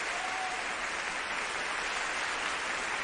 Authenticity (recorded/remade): recorded